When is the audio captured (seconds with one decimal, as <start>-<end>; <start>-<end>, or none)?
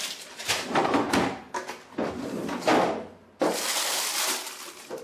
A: 0.0-5.0